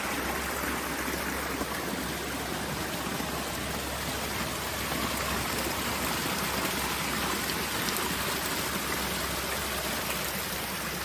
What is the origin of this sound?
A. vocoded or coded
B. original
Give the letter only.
B